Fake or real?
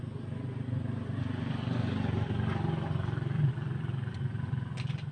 real